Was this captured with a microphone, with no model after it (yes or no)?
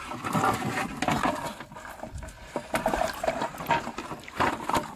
yes